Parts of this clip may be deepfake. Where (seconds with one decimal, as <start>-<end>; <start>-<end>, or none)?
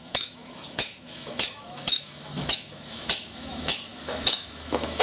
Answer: 0.0-5.0